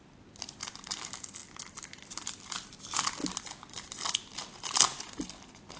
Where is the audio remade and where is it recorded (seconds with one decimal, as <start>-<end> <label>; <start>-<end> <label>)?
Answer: 0.0-1.4 recorded; 1.4-2.5 remade; 2.5-5.8 recorded